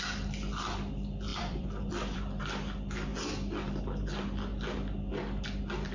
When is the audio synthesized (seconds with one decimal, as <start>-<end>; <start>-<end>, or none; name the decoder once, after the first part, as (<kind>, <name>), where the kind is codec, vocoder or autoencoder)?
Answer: 1.3-2.4 (vocoder, BigVGAN v2)